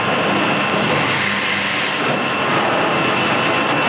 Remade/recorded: recorded